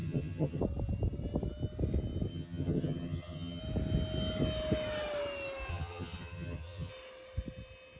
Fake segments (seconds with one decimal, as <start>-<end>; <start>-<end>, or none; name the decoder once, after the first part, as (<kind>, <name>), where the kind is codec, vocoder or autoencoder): 0.0-0.6 (vocoder, HiFi-GAN); 2.3-3.6; 5.7-6.9